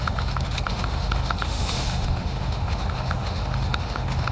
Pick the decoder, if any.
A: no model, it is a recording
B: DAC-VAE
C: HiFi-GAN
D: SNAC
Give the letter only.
B